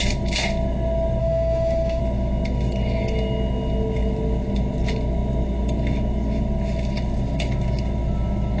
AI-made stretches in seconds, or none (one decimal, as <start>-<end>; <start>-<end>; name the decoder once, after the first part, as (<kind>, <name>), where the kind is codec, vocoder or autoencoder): 1.2-2.0 (autoencoder, DAC-VAE)